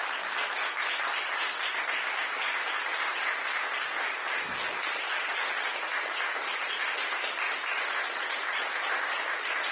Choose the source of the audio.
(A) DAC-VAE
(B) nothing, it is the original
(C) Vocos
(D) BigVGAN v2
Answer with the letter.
B